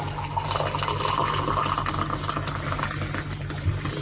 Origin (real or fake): real